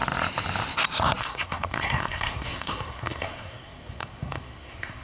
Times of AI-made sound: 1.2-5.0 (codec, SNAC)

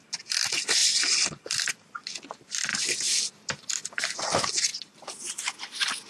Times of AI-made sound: 2.7-3.7 (vocoder, BigVGAN v2)

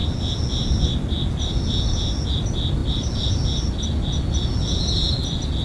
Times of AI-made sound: none